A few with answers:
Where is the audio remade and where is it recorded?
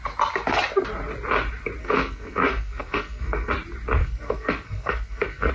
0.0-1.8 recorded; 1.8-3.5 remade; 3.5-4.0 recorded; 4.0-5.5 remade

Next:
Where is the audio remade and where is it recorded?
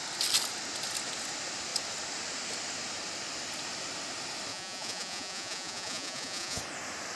0.0-4.5 recorded; 4.5-6.6 remade; 6.6-7.2 recorded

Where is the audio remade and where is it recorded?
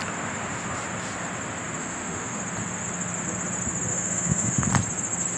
0.0-1.8 recorded; 1.8-2.4 remade; 2.4-3.9 recorded; 3.9-4.7 remade; 4.7-5.4 recorded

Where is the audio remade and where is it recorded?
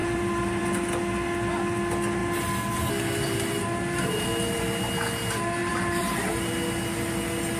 0.0-0.6 remade; 0.6-5.7 recorded; 5.7-6.3 remade; 6.3-7.6 recorded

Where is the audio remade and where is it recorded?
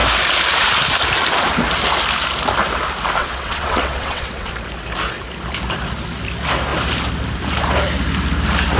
0.0-3.2 recorded; 3.2-4.5 remade; 4.5-8.8 recorded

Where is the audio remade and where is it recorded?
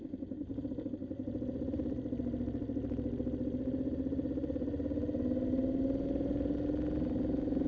0.0-7.7 recorded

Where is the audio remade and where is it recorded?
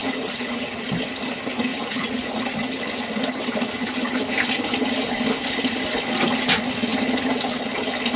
0.0-0.7 remade; 0.7-1.7 recorded; 1.7-2.4 remade; 2.4-8.2 recorded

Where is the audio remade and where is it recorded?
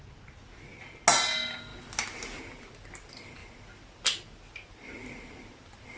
0.0-6.0 recorded